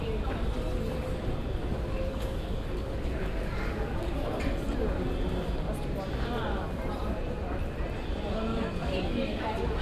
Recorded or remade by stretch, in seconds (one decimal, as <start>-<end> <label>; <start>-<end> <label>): 0.0-2.1 recorded; 2.1-4.4 remade; 4.4-8.5 recorded; 8.5-9.4 remade; 9.4-9.8 recorded